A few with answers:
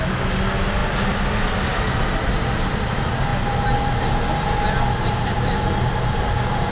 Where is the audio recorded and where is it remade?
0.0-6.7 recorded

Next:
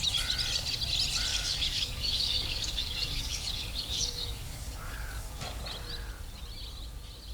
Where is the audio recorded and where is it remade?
0.0-1.3 recorded; 1.3-5.6 remade; 5.6-7.3 recorded

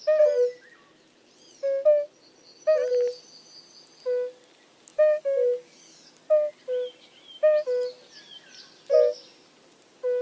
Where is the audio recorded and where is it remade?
0.0-4.9 recorded; 4.9-6.1 remade; 6.1-10.2 recorded

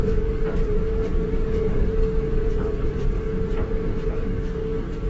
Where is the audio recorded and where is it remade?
0.0-3.3 remade; 3.3-4.1 recorded; 4.1-5.1 remade

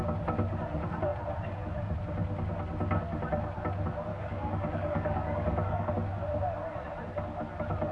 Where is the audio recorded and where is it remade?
0.0-4.1 recorded; 4.1-5.9 remade; 5.9-7.9 recorded